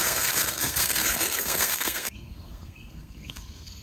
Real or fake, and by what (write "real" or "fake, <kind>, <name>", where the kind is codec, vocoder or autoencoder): fake, codec, SNAC